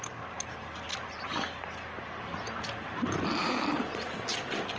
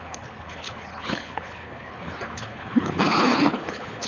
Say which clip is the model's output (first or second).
second